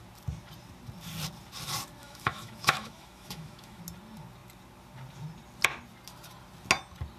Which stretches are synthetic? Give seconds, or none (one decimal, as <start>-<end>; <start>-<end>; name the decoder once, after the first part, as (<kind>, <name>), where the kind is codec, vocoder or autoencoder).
2.0-3.8 (autoencoder, DAC-VAE)